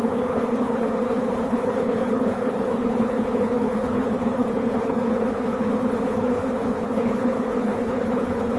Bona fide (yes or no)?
no